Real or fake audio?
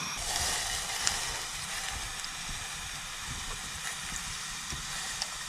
real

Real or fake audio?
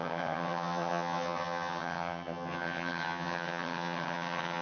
fake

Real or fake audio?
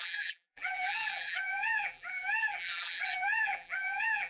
fake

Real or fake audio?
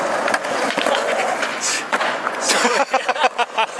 fake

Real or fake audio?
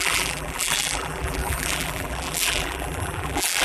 fake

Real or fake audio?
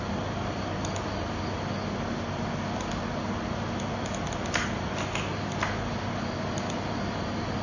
real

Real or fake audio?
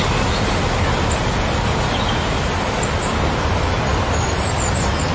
real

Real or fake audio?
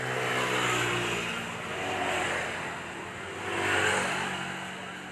real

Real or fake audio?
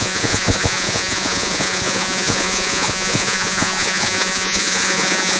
fake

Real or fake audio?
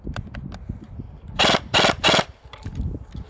real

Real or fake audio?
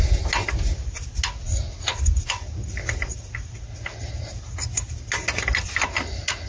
real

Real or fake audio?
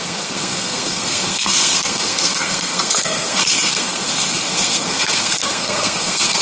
fake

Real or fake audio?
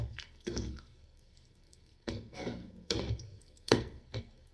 fake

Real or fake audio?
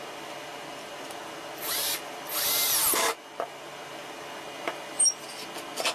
real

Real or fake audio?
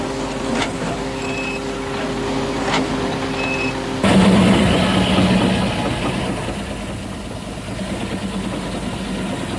real